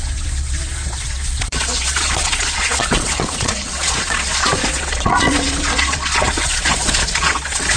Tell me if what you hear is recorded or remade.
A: remade